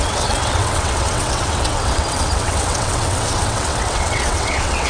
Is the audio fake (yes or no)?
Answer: yes